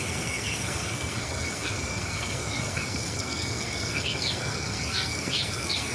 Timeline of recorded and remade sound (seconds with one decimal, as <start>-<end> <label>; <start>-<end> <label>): 0.0-5.9 remade